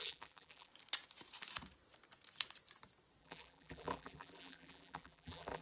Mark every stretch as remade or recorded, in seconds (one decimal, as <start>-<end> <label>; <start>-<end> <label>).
0.0-0.7 remade; 0.7-3.2 recorded; 3.2-5.6 remade